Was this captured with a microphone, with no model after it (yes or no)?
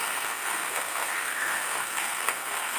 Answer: no